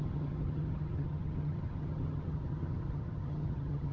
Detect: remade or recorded remade